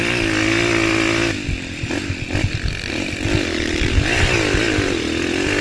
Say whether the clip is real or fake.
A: real